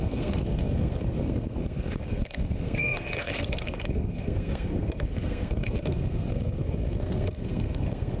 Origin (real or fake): fake